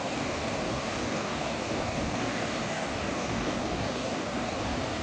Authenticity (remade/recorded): remade